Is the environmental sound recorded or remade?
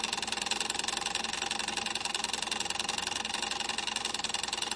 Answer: recorded